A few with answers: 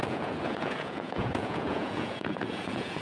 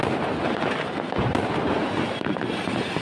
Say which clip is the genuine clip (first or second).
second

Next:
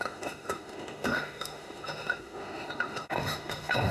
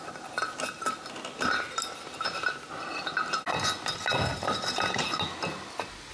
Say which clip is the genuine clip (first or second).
second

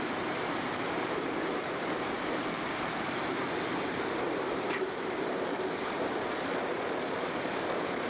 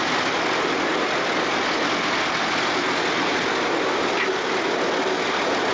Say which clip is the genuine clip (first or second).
second